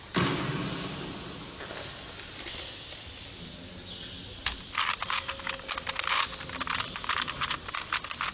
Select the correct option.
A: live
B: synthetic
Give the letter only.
A